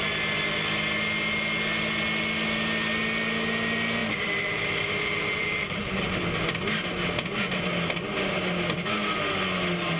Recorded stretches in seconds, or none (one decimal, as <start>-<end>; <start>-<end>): 0.0-4.0; 6.0-10.0